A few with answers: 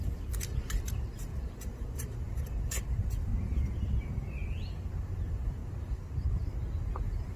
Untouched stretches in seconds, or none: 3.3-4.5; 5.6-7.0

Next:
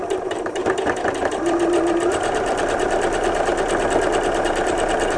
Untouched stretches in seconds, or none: 0.6-2.1; 3.5-4.4

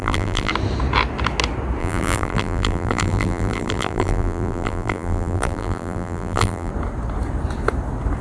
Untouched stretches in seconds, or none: 0.5-1.8; 6.7-8.2

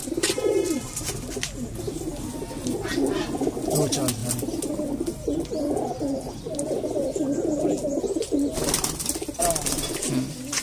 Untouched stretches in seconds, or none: 0.8-10.6

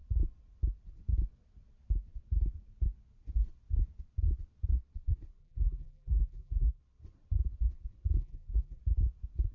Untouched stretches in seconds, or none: 0.0-5.4; 6.8-8.2; 8.8-9.5

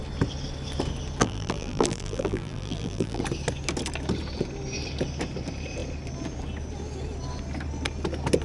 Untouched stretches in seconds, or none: 0.0-1.2; 3.2-8.4

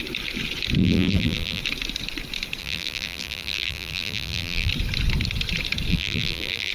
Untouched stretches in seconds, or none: 0.0-0.8; 1.6-2.6; 4.7-5.9